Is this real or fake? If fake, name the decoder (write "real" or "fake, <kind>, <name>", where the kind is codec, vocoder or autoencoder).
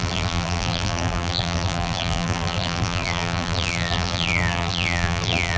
fake, vocoder, BigVGAN v2